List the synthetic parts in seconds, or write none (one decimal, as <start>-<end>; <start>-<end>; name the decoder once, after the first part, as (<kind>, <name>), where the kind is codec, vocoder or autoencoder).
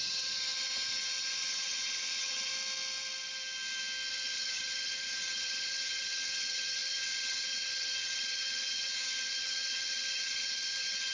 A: 0.0-2.5 (vocoder, HiFi-GAN); 4.1-11.1